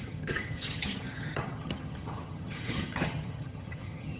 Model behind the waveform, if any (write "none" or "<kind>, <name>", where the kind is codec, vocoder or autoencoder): vocoder, HiFi-GAN